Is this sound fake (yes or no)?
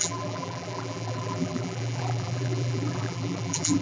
yes